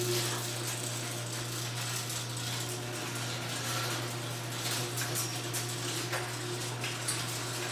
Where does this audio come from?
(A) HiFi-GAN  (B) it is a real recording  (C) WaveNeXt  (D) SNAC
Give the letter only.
B